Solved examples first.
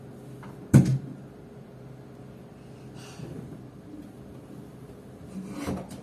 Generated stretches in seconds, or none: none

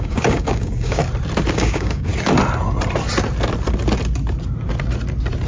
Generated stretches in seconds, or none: 0.0-1.0 (codec, DAC); 1.5-2.1

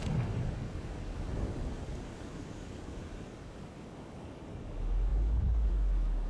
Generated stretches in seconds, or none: 0.0-6.3 (codec, DAC)